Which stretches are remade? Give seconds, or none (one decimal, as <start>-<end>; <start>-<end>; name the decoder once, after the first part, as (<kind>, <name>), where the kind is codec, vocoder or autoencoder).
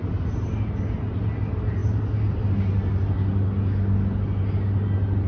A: none